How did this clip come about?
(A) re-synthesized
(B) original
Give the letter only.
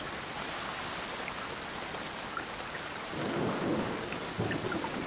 A